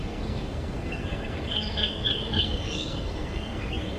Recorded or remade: remade